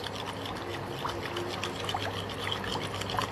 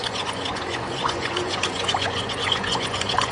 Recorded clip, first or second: first